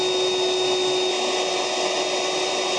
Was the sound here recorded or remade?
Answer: recorded